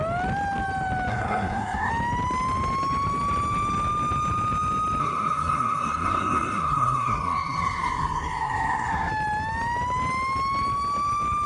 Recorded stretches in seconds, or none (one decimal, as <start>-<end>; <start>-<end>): 0.0-1.1; 1.9-5.0; 9.1-11.5